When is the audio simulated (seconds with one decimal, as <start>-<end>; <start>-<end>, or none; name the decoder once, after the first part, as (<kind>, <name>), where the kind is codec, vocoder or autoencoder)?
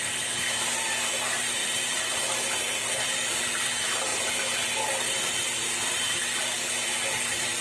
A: 1.6-3.1 (vocoder, BigVGAN v2)